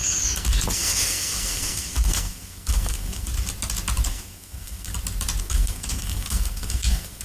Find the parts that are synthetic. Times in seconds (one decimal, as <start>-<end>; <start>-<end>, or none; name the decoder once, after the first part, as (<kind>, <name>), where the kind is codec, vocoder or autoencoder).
0.0-3.3 (codec, SNAC); 4.1-4.9; 5.4-7.2